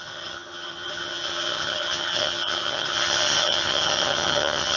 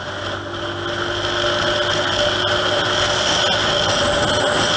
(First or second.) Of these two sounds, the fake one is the first